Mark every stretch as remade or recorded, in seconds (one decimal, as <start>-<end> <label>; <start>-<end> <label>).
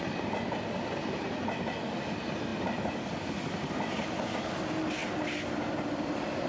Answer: 0.0-6.5 recorded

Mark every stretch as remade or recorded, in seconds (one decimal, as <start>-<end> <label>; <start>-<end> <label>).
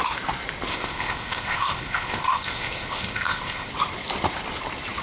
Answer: 0.0-0.7 recorded; 0.7-3.7 remade; 3.7-5.0 recorded